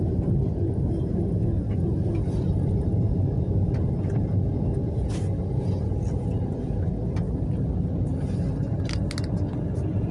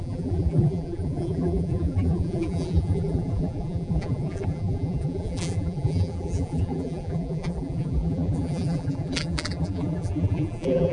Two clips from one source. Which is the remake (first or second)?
second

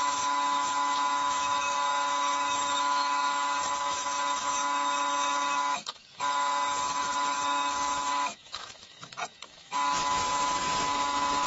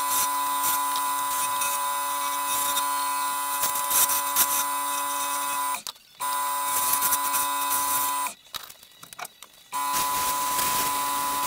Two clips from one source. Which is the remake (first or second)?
first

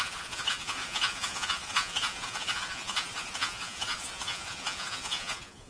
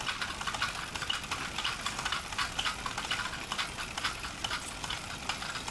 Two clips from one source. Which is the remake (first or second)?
first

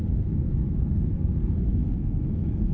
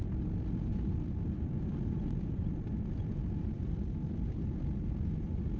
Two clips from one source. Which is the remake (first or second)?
first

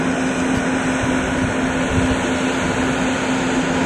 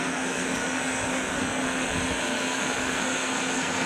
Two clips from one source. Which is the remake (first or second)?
second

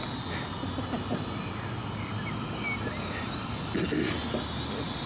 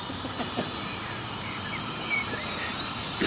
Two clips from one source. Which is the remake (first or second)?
second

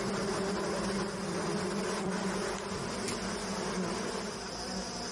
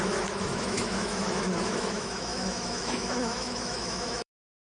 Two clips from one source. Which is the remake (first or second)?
second